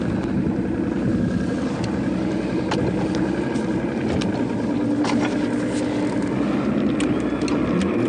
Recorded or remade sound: recorded